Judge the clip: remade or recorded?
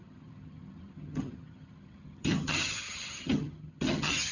remade